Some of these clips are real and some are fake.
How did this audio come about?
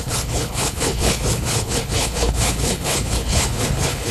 fake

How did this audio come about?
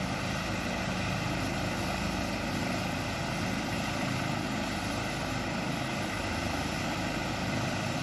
real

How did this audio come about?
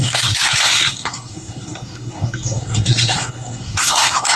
fake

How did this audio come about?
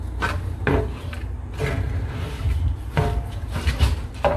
real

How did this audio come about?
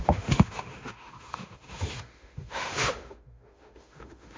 fake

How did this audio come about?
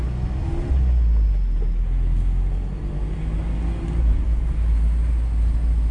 real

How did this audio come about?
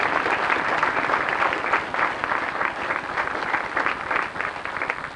real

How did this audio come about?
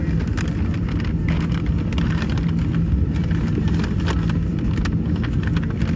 real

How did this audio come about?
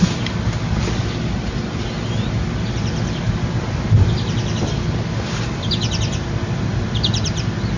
real